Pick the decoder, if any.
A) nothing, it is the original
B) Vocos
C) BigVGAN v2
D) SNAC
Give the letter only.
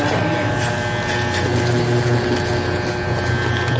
A